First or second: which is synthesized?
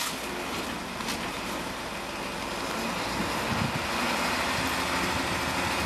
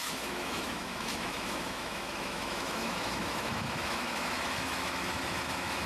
second